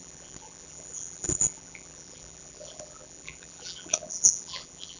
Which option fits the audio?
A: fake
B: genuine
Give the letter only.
A